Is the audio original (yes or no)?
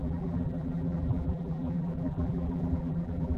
no